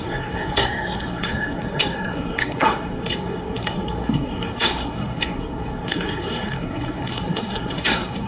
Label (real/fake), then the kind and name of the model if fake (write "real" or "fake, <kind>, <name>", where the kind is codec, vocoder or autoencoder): fake, codec, SNAC